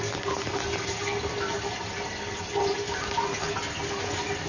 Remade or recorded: recorded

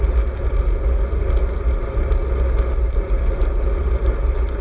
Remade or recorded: recorded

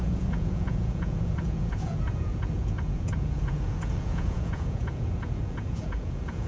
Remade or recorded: remade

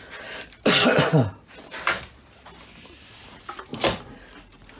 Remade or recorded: recorded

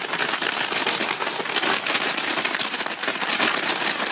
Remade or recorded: recorded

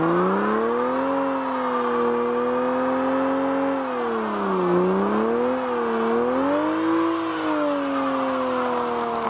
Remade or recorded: recorded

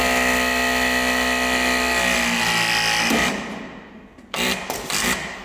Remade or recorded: recorded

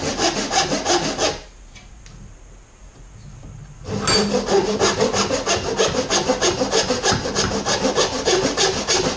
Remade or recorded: recorded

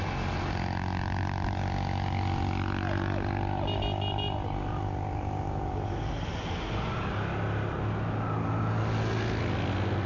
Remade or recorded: recorded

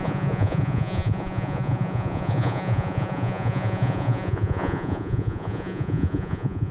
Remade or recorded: remade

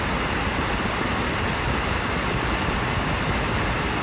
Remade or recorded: recorded